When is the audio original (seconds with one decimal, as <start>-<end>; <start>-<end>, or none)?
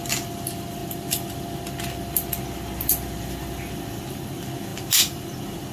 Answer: 0.0-5.7